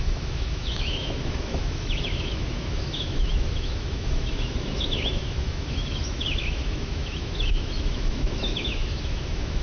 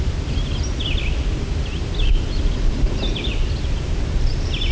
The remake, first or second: first